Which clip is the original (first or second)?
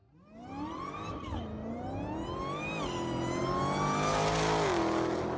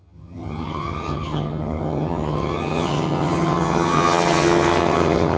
first